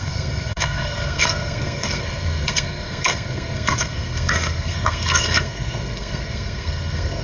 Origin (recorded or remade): remade